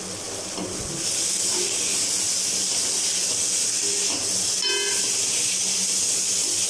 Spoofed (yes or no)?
no